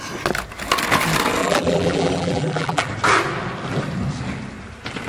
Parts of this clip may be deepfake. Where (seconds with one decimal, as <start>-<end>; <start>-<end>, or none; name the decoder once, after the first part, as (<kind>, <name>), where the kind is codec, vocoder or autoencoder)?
1.4-2.9 (vocoder, BigVGAN v2)